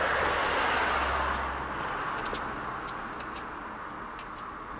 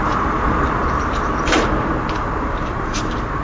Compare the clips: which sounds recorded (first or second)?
first